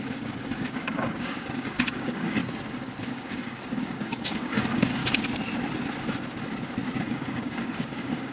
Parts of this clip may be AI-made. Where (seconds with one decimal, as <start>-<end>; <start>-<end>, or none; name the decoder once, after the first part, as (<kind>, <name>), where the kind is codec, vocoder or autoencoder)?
0.0-2.4 (codec, DAC); 3.1-5.0; 7.0-8.3